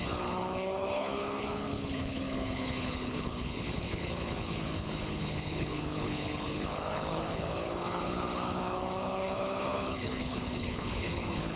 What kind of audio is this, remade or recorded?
remade